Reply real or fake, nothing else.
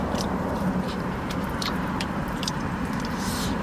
fake